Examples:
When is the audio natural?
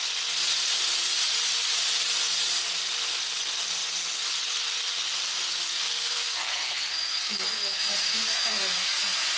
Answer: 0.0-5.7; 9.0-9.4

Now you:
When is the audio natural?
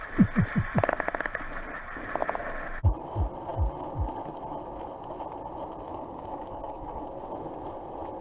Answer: 0.0-5.9; 7.2-8.2